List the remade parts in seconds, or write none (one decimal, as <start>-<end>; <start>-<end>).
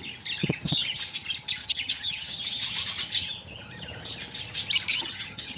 0.4-1.0; 1.6-2.7; 4.9-5.6